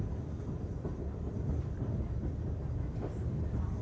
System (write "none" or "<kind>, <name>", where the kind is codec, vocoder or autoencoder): none